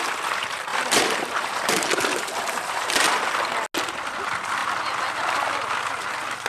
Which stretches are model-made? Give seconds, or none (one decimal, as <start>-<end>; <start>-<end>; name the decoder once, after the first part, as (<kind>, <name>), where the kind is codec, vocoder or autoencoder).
0.7-3.2 (vocoder, BigVGAN v2)